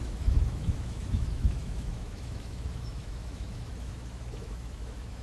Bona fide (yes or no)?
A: no